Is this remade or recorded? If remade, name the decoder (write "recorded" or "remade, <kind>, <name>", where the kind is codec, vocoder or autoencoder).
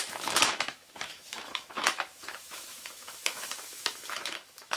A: remade, autoencoder, DAC-VAE